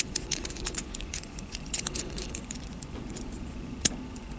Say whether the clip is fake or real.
fake